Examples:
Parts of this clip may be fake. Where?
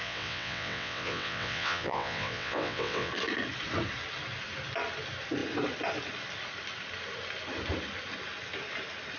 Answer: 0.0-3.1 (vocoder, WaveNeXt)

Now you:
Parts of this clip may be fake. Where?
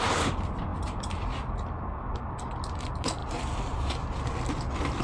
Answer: none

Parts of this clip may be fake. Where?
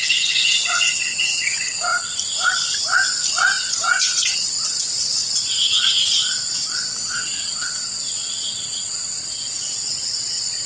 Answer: 0.0-1.9 (vocoder, WaveNeXt); 3.7-10.7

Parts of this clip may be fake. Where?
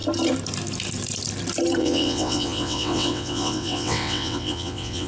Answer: 1.8-5.1 (vocoder, WaveNeXt)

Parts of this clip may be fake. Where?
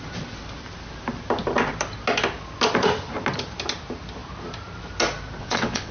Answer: 5.4-5.9 (vocoder, WaveNeXt)